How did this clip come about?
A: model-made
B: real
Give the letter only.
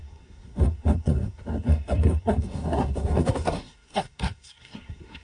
A